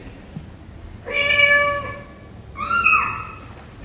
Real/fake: real